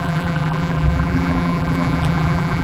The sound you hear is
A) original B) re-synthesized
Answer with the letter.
B